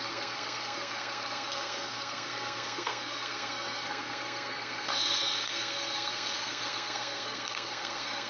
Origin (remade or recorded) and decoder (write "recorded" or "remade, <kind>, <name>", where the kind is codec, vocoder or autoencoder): remade, codec, SNAC